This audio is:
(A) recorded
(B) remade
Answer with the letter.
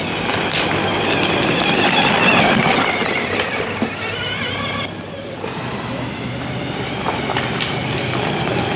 A